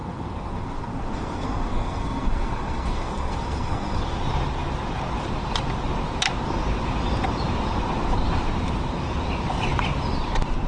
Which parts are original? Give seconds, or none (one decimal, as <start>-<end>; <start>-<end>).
4.0-10.7